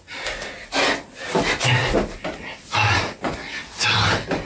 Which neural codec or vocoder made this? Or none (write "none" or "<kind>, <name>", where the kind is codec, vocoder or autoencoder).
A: none